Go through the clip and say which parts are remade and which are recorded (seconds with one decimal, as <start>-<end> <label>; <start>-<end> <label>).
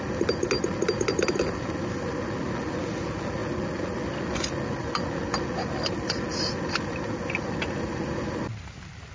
0.0-9.1 recorded